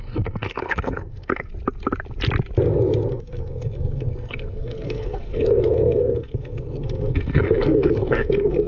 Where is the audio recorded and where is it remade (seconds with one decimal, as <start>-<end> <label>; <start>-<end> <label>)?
0.0-1.5 remade; 1.5-3.1 recorded; 3.1-8.7 remade